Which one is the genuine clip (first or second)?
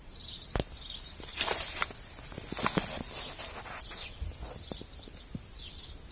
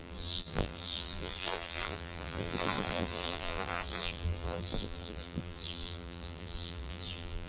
first